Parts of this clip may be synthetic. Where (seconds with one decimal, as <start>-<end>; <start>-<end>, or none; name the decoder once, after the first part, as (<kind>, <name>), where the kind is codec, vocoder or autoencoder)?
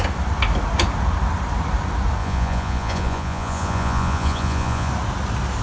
2.2-4.9 (vocoder, Vocos)